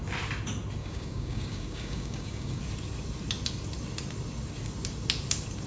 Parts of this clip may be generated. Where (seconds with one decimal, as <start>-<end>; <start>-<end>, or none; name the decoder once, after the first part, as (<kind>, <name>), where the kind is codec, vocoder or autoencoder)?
0.8-2.6 (codec, DAC)